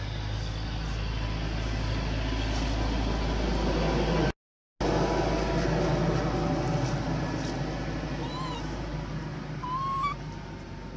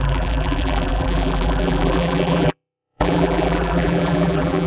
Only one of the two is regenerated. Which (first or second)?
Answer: second